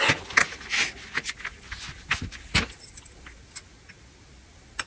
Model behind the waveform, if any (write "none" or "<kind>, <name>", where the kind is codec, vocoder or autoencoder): none